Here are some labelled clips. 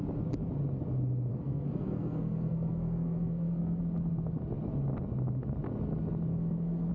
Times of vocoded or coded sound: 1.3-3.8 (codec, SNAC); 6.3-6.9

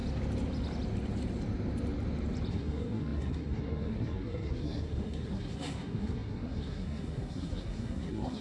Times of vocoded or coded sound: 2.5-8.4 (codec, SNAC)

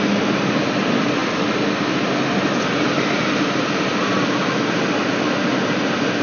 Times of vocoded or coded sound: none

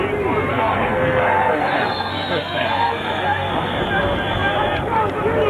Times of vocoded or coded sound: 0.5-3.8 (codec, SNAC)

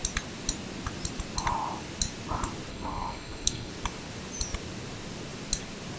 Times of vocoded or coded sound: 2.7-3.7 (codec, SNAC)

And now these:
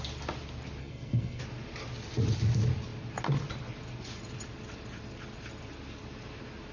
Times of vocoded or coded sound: 0.8-1.4 (codec, SNAC)

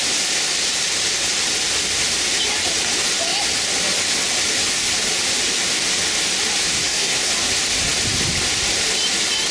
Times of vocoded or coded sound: 6.7-7.3 (codec, SNAC)

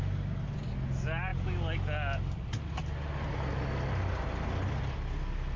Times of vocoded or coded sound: none